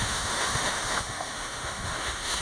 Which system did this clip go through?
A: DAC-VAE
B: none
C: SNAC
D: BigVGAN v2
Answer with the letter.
A